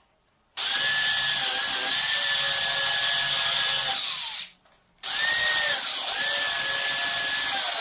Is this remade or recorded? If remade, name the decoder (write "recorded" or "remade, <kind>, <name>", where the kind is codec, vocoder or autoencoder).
recorded